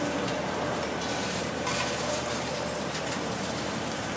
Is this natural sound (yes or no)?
no